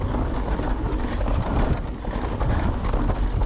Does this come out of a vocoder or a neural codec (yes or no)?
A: no